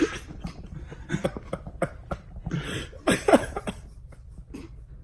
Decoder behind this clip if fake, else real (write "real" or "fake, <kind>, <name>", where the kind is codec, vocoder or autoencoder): fake, vocoder, BigVGAN v2